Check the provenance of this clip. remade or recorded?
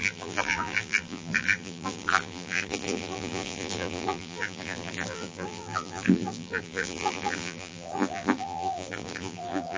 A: remade